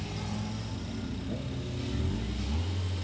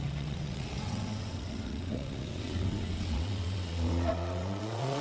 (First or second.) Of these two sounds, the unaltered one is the first